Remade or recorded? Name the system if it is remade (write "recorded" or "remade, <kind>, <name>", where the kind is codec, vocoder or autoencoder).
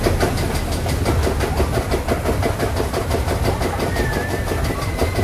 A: recorded